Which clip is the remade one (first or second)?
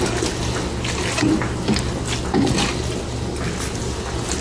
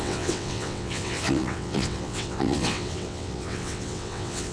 second